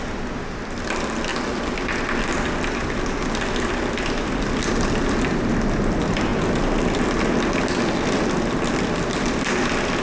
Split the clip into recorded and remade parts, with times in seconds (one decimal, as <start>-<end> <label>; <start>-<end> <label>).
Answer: 0.0-10.0 recorded